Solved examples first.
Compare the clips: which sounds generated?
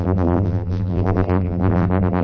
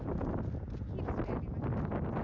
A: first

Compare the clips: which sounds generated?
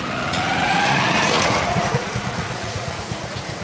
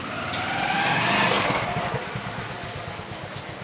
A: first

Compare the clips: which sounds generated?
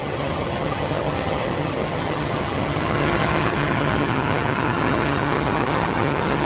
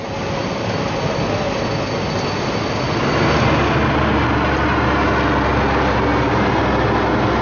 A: first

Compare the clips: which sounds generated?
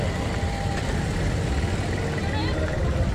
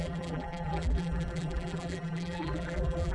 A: second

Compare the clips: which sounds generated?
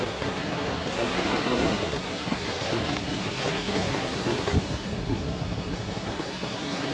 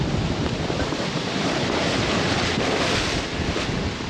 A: first